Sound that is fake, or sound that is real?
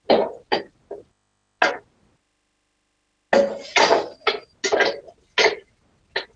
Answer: real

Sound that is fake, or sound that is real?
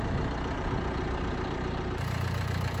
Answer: fake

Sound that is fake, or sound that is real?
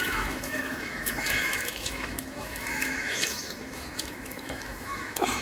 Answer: fake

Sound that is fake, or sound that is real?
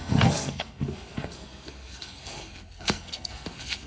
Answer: fake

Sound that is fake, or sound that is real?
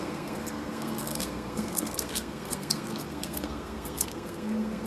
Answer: fake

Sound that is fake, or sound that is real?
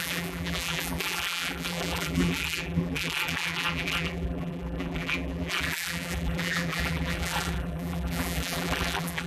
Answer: fake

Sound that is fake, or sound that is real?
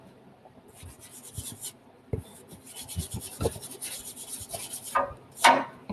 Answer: fake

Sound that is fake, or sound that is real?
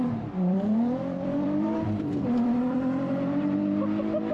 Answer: fake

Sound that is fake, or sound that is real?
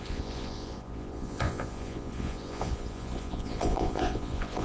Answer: fake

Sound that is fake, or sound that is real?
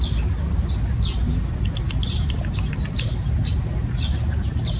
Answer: real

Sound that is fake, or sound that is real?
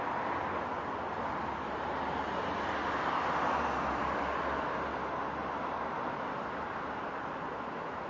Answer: real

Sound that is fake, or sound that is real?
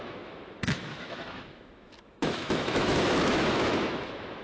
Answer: fake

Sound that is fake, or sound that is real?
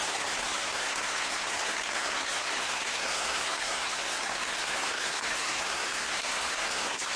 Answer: fake